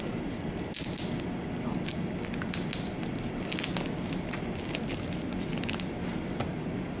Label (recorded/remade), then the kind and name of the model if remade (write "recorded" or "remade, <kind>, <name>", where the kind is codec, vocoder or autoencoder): recorded